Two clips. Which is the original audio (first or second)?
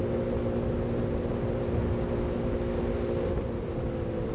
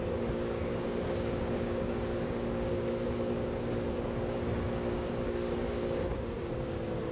first